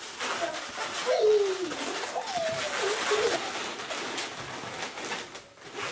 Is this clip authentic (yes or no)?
yes